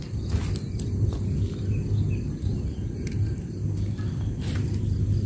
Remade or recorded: recorded